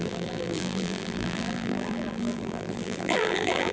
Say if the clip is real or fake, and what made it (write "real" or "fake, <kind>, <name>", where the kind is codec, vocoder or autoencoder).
fake, vocoder, BigVGAN v2